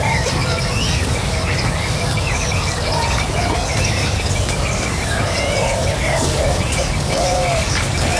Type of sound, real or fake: fake